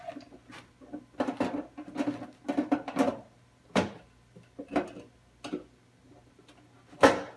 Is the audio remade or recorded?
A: recorded